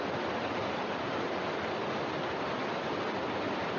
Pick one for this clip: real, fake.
real